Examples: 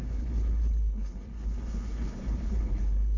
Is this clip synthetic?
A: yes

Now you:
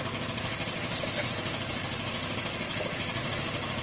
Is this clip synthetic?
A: no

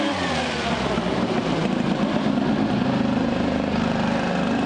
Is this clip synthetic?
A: no